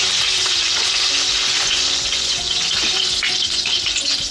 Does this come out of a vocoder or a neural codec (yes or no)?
yes